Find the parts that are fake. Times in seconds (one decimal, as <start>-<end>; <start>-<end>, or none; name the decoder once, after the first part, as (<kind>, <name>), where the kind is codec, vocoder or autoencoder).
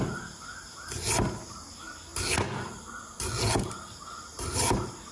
none